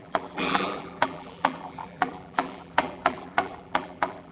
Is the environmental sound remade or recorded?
remade